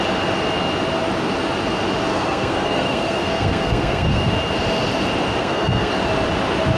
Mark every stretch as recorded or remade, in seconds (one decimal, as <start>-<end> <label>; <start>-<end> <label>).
0.0-2.1 recorded; 2.1-4.3 remade; 4.3-5.4 recorded; 5.4-5.9 remade; 5.9-6.8 recorded